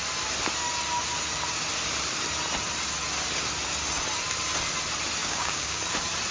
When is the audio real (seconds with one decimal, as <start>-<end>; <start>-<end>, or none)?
0.0-5.2; 5.8-6.3

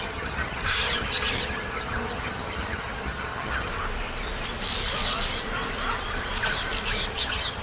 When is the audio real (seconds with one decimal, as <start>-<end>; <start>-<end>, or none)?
3.7-7.1

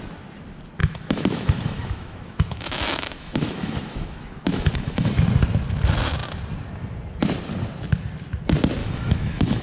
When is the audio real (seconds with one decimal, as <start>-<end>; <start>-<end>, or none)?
0.0-0.8; 5.1-8.8

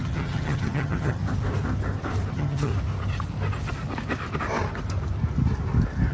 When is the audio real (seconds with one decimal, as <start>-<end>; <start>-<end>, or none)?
1.2-2.3; 2.7-6.1